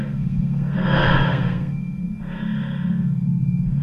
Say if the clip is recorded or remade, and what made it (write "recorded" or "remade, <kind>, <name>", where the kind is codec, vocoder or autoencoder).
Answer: remade, codec, SNAC